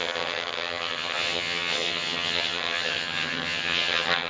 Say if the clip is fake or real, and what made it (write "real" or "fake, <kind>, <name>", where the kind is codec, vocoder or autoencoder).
fake, vocoder, HiFi-GAN